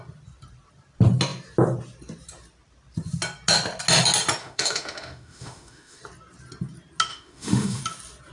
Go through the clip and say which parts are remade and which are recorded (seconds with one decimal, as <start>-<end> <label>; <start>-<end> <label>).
0.0-4.4 recorded; 4.4-6.0 remade; 6.0-7.1 recorded; 7.1-7.8 remade; 7.8-8.3 recorded